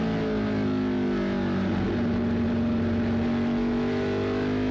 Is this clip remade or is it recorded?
recorded